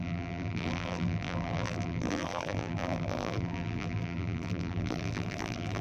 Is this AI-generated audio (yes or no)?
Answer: yes